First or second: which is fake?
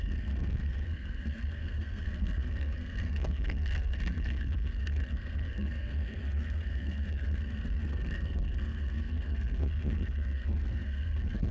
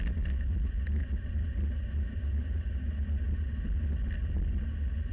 first